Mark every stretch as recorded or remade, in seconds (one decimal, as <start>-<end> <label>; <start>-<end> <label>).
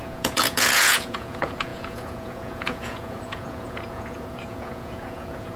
0.0-5.6 remade